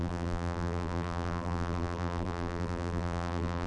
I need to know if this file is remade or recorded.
remade